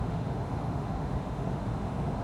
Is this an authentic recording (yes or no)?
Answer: no